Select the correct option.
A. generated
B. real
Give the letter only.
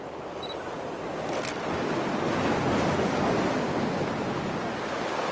B